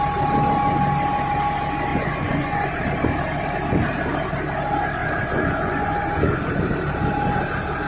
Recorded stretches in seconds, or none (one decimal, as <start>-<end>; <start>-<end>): 0.0-1.9; 2.8-5.0; 6.5-7.9